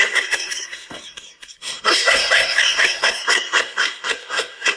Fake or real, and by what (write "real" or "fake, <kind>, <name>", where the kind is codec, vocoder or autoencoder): fake, codec, SNAC